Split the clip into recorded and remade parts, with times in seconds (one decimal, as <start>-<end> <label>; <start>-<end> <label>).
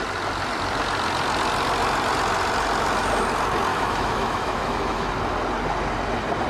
0.0-3.7 recorded; 3.7-5.1 remade; 5.1-6.5 recorded